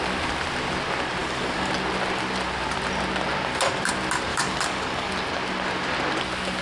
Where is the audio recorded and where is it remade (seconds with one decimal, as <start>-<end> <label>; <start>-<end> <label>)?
0.0-1.2 recorded; 1.2-1.7 remade; 1.7-4.3 recorded; 4.3-5.1 remade; 5.1-6.6 recorded